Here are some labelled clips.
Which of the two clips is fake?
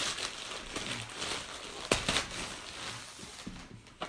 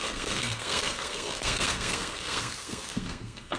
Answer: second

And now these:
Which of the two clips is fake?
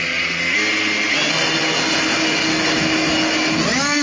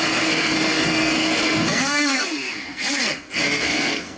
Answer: second